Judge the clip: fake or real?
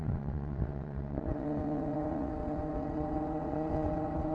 fake